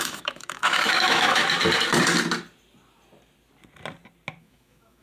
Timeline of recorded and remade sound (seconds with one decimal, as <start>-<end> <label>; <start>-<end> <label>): 0.0-1.4 remade; 1.4-4.4 recorded; 4.4-5.0 remade